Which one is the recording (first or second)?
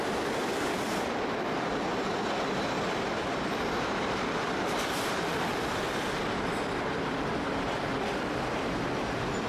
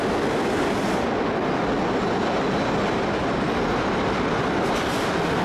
second